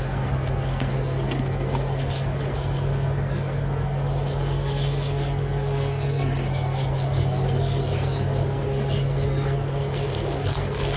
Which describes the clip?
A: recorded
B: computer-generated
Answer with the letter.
B